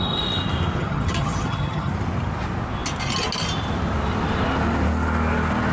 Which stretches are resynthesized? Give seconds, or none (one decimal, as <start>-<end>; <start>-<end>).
0.8-1.9

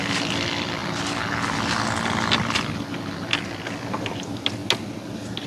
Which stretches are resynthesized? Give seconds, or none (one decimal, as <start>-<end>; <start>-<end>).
none

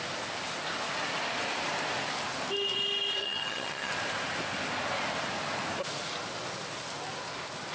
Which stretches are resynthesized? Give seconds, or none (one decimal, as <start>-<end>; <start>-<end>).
3.2-3.9

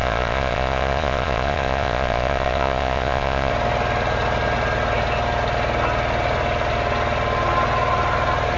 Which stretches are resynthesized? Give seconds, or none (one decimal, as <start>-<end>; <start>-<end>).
0.0-3.5

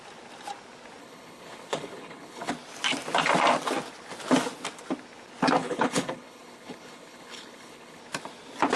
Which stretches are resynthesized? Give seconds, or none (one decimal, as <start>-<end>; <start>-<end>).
1.0-2.5; 5.6-8.0